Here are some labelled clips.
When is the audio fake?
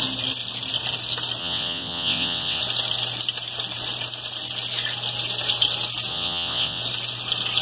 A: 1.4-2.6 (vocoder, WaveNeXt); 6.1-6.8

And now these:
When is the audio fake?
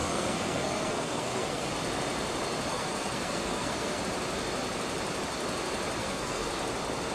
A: 0.0-1.7 (codec, SNAC); 2.7-4.0; 6.0-6.5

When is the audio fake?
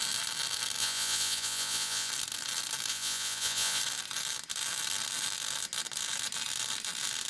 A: 0.8-2.1 (vocoder, Vocos); 2.9-3.8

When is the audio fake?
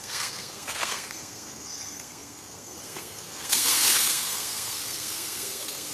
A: 0.0-5.9 (codec, SNAC)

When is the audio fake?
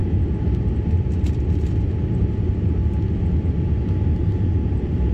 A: none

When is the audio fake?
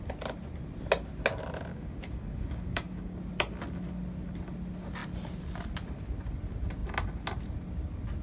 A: 1.7-3.2 (codec, DAC)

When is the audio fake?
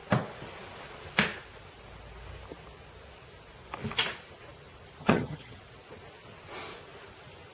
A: 5.0-5.6 (vocoder, HiFi-GAN)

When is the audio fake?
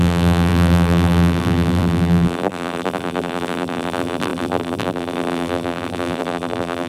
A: 0.0-6.9 (vocoder, BigVGAN v2)